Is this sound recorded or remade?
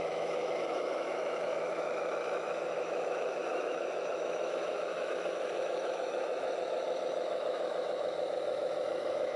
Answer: remade